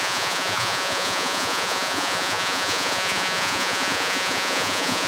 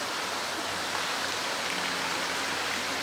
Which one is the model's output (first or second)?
first